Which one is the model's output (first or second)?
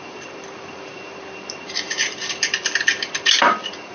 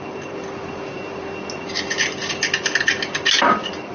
first